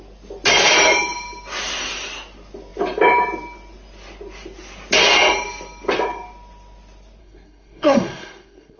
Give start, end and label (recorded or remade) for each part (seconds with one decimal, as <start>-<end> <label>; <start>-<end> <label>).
0.0-7.2 recorded; 7.2-8.8 remade